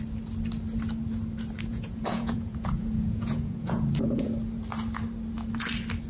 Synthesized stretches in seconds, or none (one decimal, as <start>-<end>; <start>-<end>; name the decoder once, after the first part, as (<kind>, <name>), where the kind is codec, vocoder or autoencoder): 1.7-4.3 (vocoder, Vocos)